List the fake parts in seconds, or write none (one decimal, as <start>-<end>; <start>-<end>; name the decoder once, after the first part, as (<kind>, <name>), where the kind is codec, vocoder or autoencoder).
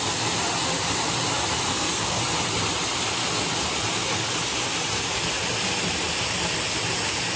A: 1.7-2.2 (codec, SNAC)